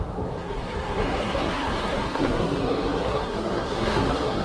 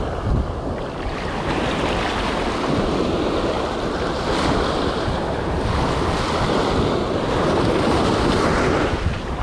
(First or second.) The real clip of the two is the second